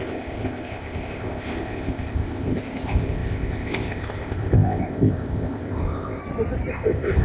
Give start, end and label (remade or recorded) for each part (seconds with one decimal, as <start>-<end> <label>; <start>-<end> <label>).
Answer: 0.0-6.2 remade; 6.2-6.7 recorded; 6.7-7.2 remade